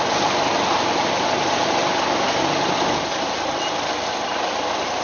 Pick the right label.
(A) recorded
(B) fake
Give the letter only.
A